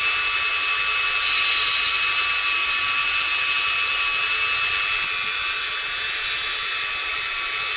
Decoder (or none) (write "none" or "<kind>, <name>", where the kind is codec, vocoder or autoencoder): none